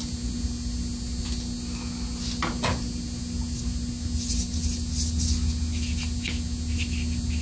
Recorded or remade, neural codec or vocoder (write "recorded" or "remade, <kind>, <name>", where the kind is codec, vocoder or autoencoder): recorded